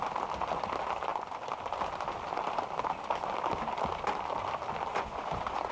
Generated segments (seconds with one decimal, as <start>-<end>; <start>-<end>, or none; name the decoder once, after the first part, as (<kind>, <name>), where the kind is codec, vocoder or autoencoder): 4.9-5.7 (vocoder, Vocos)